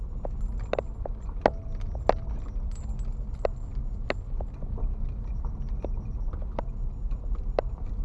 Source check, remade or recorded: recorded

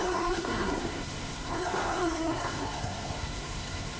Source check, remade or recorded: remade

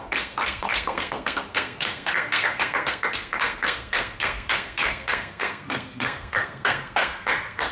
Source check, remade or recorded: remade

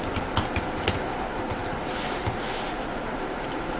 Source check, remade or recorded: recorded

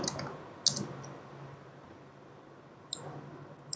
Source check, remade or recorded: recorded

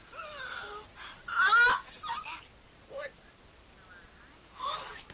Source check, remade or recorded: recorded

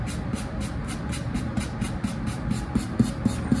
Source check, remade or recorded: recorded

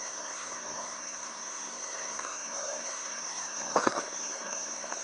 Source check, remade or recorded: remade